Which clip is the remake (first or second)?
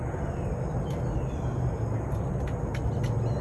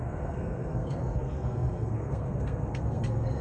second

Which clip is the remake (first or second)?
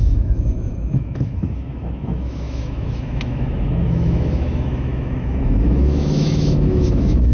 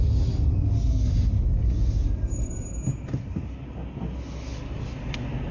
first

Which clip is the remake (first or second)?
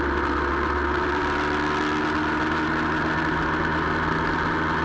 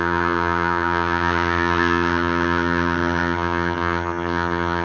second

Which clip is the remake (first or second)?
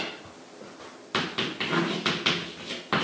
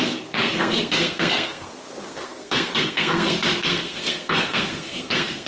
second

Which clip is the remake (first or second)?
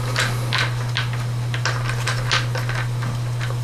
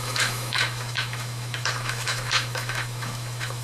second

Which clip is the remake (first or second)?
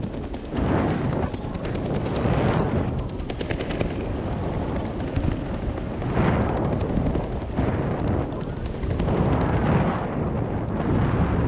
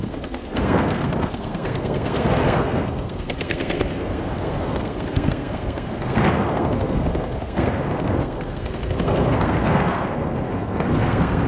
second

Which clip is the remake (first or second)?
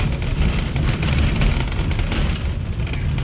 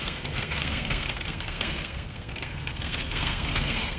second